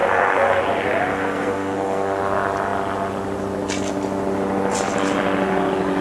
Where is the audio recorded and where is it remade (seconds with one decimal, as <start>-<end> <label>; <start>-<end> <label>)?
0.0-0.6 remade; 0.6-1.1 recorded; 1.1-2.2 remade; 2.2-6.0 recorded